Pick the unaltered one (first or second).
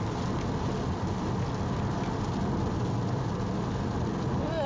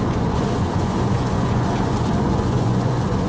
first